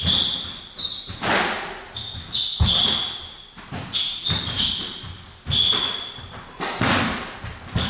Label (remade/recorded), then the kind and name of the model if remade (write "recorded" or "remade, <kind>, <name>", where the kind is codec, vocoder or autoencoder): recorded